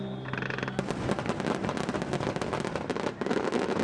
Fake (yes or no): no